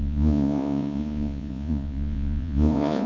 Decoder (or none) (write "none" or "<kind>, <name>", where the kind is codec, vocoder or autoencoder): vocoder, Vocos